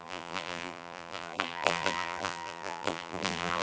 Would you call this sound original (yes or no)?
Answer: no